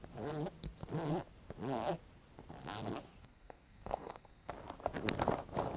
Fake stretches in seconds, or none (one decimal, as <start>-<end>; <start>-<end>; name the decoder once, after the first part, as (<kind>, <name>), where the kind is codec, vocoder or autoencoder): 3.2-4.5 (codec, SNAC)

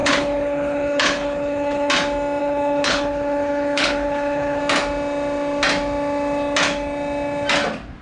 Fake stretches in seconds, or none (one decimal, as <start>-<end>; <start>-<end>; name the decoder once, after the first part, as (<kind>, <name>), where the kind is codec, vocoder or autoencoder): 0.0-1.9 (codec, HILCodec); 2.4-4.6

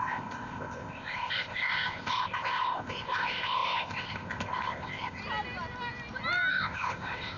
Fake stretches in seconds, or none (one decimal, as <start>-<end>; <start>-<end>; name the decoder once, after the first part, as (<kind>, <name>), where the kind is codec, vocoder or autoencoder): 0.0-5.2 (codec, ZipCodec); 6.5-7.4

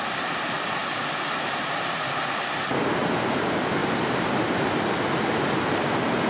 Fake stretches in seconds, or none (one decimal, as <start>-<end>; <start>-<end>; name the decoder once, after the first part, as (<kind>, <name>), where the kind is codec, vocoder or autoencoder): 0.0-0.8 (vocoder, BigVGAN v2); 3.2-6.3

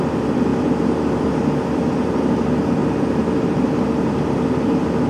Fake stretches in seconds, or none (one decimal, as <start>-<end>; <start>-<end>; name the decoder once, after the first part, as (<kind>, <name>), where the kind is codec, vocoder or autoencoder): 0.0-0.5 (vocoder, BigVGAN v2); 1.2-2.8; 3.4-5.1